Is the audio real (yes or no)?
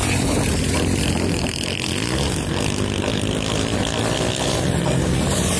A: yes